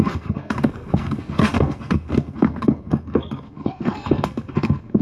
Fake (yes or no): yes